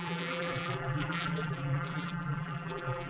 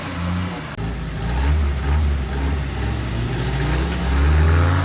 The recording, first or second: second